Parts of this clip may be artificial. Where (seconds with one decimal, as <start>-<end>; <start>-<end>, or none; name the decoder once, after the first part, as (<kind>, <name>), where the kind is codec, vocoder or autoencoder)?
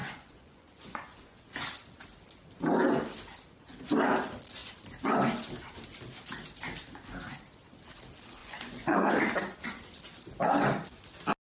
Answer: 0.0-1.5 (vocoder, Vocos); 8.4-9.1